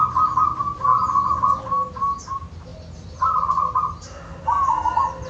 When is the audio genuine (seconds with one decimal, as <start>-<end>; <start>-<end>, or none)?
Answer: 0.0-5.3